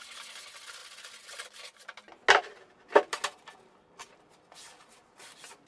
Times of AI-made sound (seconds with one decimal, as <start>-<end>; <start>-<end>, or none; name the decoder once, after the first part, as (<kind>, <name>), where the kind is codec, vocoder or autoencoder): none